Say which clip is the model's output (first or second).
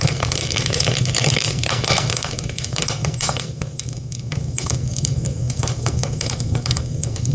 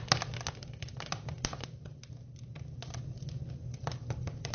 first